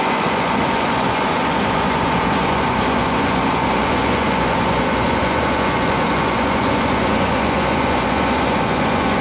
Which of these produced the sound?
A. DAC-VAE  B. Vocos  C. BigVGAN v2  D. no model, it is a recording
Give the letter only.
B